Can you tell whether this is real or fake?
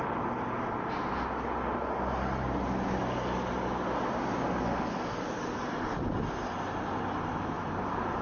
real